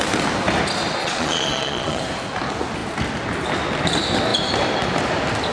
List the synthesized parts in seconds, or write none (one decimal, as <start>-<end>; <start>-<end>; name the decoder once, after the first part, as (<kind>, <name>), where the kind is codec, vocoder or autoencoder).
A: 1.0-2.0 (vocoder, Vocos)